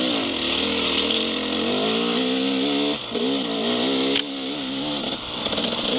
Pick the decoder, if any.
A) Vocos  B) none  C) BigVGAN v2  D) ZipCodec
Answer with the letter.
B